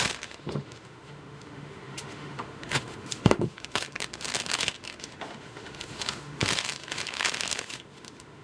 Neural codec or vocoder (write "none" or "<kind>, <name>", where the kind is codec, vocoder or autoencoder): autoencoder, DAC-VAE